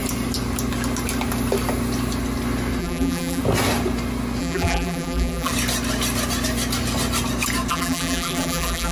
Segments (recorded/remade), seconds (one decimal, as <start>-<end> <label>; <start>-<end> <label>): 0.0-2.8 recorded; 2.8-3.4 remade; 3.4-4.4 recorded; 4.4-5.5 remade; 5.5-7.7 recorded; 7.7-8.9 remade